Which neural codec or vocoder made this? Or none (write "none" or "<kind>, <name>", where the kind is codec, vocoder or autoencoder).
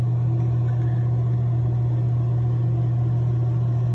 none